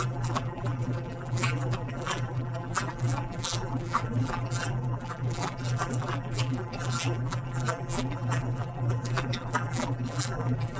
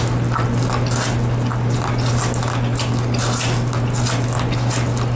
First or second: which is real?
second